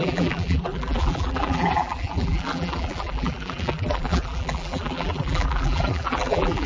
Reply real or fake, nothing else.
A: fake